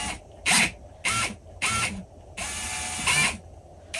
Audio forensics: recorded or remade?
recorded